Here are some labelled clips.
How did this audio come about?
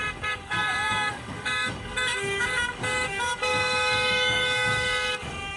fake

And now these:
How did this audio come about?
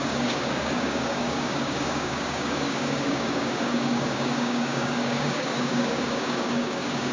fake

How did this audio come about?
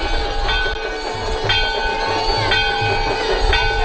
real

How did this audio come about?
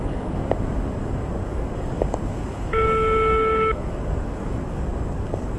fake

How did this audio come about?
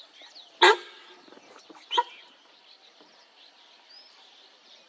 real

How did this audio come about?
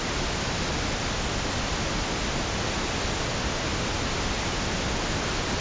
real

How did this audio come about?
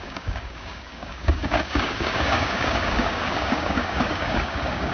fake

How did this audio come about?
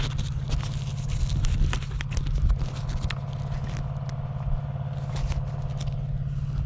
real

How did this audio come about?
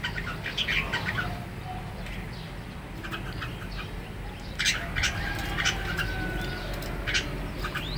real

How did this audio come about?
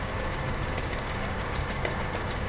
fake